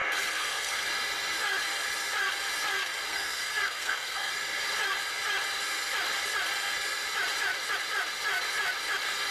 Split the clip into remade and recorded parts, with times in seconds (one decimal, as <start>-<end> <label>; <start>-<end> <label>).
0.0-0.9 remade; 0.9-3.1 recorded; 3.1-4.3 remade; 4.3-9.3 recorded